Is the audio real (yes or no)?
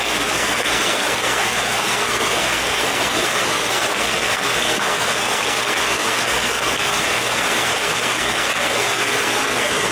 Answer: no